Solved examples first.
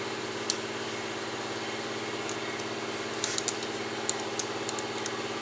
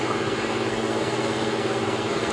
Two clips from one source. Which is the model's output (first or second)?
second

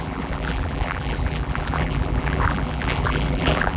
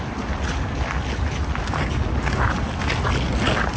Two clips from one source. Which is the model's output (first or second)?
first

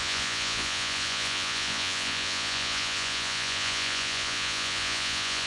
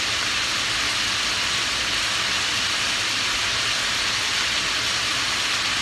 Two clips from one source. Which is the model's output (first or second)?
first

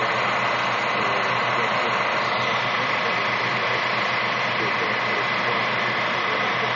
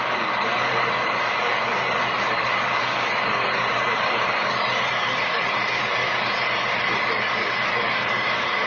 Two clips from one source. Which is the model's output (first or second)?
second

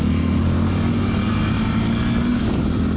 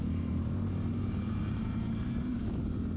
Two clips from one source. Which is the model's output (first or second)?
second